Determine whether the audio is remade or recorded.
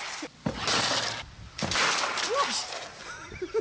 recorded